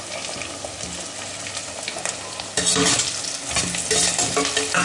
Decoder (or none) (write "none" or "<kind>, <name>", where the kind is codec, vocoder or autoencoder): none